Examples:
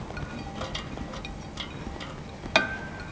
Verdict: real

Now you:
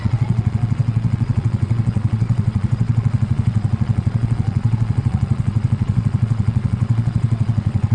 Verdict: fake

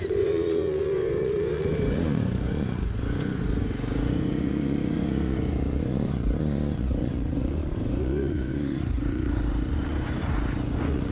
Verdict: fake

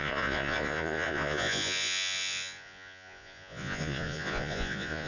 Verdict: fake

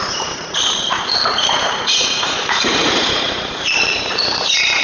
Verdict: fake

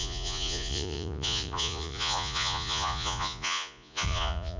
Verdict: fake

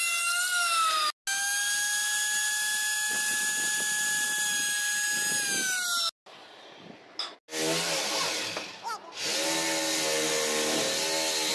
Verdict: real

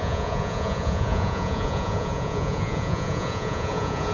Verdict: fake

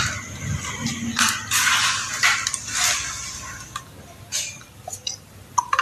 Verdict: real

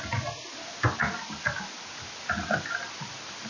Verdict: real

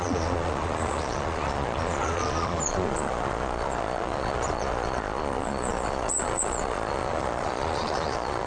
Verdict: fake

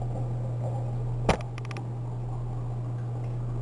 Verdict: real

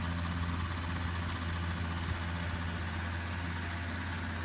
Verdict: real